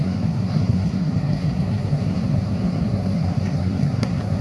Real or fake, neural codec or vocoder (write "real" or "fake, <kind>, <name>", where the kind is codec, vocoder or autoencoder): fake, codec, SNAC